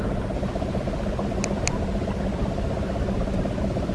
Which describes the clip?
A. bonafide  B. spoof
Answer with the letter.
A